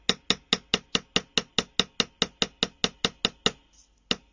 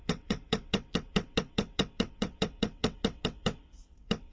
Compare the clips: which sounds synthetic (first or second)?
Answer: second